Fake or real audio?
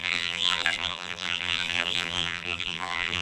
fake